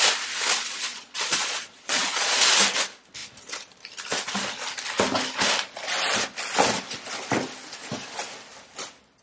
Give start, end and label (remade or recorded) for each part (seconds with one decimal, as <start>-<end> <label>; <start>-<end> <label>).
0.0-0.9 recorded; 0.9-2.4 remade; 2.4-9.2 recorded

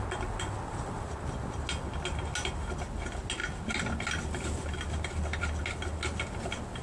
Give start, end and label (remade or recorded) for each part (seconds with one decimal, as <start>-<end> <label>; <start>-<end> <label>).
0.0-6.8 recorded

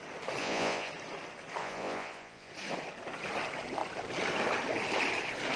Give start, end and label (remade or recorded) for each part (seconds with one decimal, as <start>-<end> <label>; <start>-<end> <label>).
0.0-0.4 recorded; 0.4-0.9 remade; 0.9-1.6 recorded; 1.6-2.5 remade; 2.5-5.6 recorded

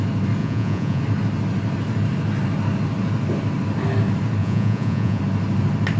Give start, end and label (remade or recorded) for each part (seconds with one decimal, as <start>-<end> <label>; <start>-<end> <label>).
0.0-0.4 recorded; 0.4-1.0 remade; 1.0-4.4 recorded; 4.4-5.2 remade; 5.2-6.0 recorded

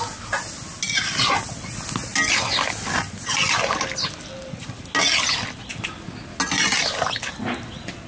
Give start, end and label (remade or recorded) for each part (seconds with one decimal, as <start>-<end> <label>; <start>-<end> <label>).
0.0-8.1 recorded

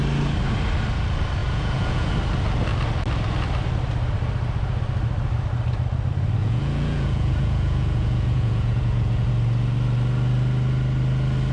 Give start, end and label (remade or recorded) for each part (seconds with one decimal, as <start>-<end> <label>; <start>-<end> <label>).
0.0-1.4 recorded; 1.4-2.1 remade; 2.1-6.4 recorded; 6.4-9.3 remade; 9.3-11.5 recorded

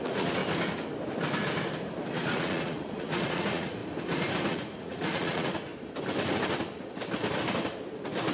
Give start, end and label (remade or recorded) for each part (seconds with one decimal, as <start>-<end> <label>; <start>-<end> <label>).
0.0-0.4 remade; 0.4-2.1 recorded; 2.1-3.8 remade; 3.8-4.5 recorded; 4.5-5.7 remade; 5.7-8.3 recorded

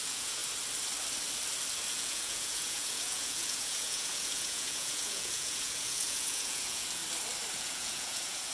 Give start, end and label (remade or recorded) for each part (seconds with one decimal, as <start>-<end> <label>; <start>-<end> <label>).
0.0-0.4 remade; 0.4-1.9 recorded; 1.9-7.0 remade; 7.0-7.5 recorded; 7.5-8.5 remade